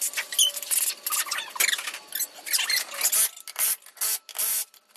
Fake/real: real